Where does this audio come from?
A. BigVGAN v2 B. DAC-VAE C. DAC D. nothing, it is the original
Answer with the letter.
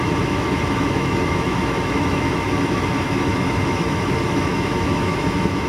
B